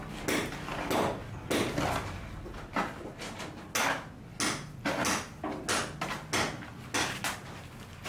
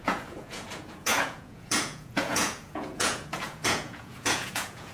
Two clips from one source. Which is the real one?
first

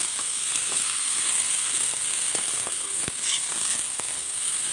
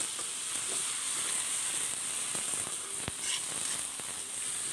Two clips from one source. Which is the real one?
second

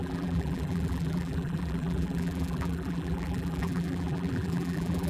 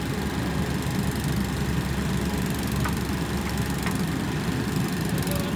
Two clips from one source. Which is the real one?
second